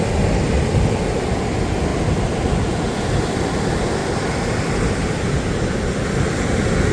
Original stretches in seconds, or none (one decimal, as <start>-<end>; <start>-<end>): 0.0-1.9; 3.4-6.9